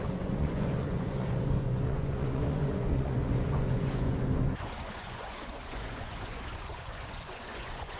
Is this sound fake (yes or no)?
yes